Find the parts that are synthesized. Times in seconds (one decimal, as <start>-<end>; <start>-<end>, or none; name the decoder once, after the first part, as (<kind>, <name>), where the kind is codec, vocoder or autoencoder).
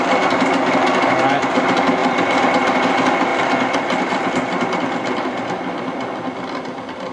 none